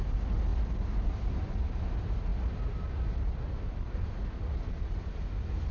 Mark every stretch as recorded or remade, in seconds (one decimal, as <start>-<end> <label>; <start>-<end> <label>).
0.0-5.7 recorded